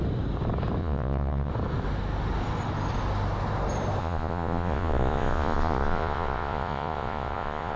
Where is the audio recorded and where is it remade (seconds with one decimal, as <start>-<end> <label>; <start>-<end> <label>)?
0.0-0.8 recorded; 0.8-1.5 remade; 1.5-4.0 recorded; 4.0-7.8 remade